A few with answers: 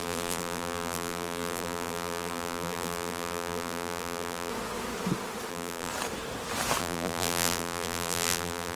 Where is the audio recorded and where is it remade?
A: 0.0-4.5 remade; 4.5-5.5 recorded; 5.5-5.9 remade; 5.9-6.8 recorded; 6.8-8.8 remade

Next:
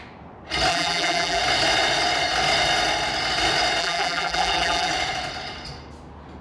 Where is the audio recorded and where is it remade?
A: 0.0-0.7 recorded; 0.7-1.4 remade; 1.4-3.8 recorded; 3.8-4.9 remade; 4.9-6.4 recorded